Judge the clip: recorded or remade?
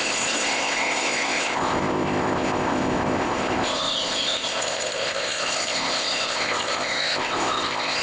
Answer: remade